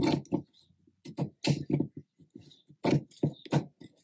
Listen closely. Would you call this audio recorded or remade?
recorded